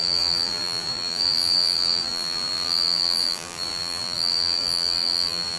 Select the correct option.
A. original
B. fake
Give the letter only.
B